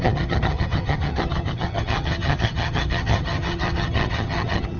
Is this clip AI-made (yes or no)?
yes